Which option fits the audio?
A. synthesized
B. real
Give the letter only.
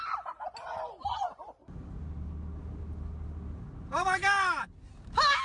B